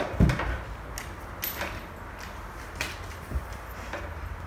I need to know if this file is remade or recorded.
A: recorded